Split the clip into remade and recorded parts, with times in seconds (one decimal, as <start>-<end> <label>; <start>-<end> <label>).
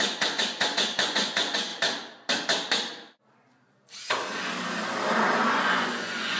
0.0-1.7 remade; 1.7-5.5 recorded; 5.5-6.4 remade